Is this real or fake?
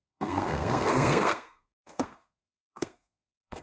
fake